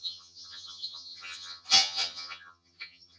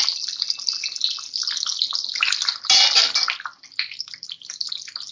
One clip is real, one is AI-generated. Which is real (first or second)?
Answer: second